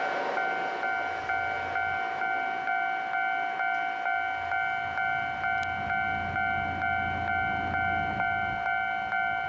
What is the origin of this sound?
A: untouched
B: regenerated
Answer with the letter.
A